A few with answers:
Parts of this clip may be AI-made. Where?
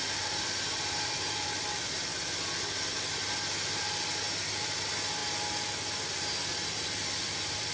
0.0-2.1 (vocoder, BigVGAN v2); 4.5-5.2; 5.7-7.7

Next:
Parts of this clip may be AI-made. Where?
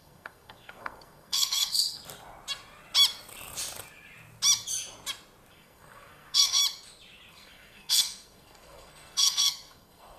0.0-2.0 (codec, SNAC); 5.5-6.6; 7.3-10.2